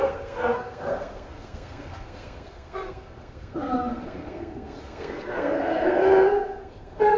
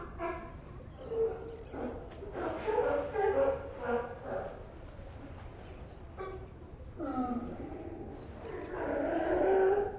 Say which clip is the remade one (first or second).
first